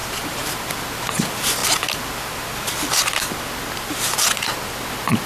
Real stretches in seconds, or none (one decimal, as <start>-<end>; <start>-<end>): 0.0-5.3